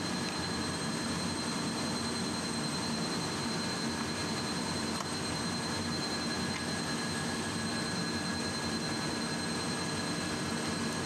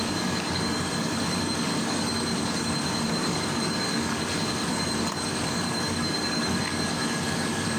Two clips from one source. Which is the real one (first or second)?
first